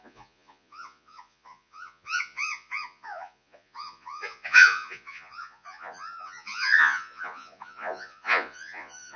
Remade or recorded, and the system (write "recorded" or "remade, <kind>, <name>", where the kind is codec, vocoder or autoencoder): remade, vocoder, Vocos